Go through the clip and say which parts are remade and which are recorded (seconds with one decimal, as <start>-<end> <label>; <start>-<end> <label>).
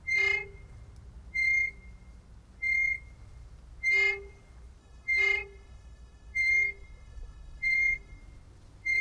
0.0-4.8 recorded; 4.8-8.2 remade; 8.2-9.0 recorded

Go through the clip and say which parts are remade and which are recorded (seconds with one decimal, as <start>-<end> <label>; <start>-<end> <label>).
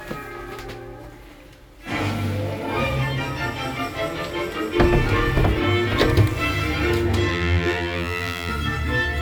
0.0-7.3 recorded; 7.3-8.5 remade; 8.5-9.2 recorded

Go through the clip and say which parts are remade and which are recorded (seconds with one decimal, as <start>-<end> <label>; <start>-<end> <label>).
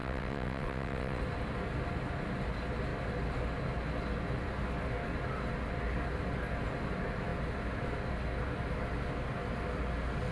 0.0-1.2 remade; 1.2-10.3 recorded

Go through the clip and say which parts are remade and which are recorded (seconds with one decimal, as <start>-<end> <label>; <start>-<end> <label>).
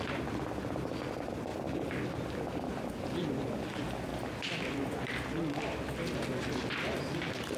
0.0-7.6 recorded